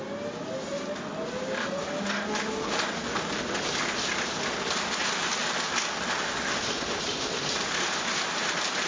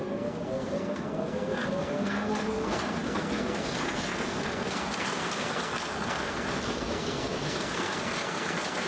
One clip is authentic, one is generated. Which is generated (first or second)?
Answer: second